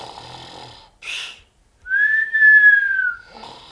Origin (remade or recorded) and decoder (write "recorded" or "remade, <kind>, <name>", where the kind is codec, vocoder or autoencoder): recorded